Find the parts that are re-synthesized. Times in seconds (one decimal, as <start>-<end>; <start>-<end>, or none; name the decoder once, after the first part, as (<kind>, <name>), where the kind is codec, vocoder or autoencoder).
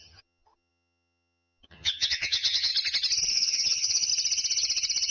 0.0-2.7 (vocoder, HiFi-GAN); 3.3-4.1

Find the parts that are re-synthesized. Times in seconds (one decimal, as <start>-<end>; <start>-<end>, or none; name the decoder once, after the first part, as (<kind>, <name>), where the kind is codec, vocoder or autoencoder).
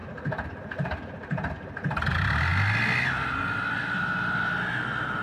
none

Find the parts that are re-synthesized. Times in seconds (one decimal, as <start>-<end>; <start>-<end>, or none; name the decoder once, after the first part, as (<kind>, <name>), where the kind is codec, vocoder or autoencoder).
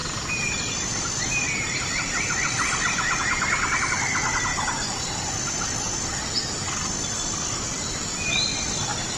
none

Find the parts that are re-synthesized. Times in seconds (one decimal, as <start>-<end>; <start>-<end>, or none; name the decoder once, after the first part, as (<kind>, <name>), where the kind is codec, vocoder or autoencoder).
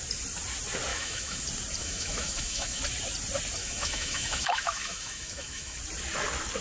0.9-1.4 (autoencoder, DAC-VAE); 1.8-2.8; 3.6-5.8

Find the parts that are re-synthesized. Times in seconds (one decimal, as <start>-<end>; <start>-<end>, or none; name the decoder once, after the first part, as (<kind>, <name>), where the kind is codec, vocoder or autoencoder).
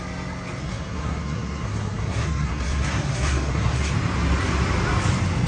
0.6-3.9 (codec, SNAC)